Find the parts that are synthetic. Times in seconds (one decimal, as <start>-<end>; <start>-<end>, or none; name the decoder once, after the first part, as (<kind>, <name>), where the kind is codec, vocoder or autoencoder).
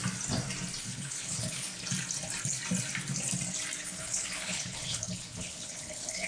0.8-1.7 (codec, HILCodec); 3.8-6.3